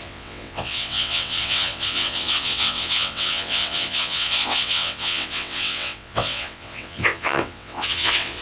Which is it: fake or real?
fake